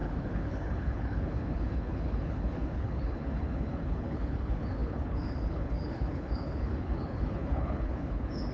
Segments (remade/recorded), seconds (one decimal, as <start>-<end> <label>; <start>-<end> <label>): 0.0-8.5 remade